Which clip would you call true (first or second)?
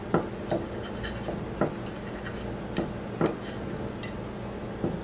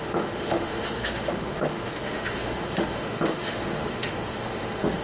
first